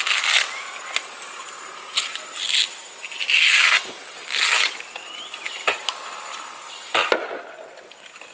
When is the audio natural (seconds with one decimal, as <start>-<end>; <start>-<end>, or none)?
0.0-8.3